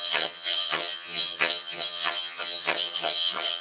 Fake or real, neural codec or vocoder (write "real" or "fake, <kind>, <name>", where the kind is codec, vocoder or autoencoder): fake, vocoder, HiFi-GAN